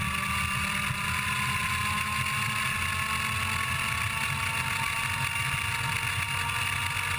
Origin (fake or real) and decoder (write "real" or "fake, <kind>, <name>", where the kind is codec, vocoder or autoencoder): real